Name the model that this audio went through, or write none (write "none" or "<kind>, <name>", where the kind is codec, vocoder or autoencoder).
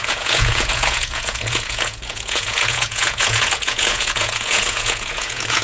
vocoder, Vocos